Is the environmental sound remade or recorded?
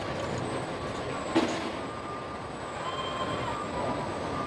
recorded